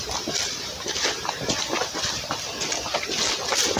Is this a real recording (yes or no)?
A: yes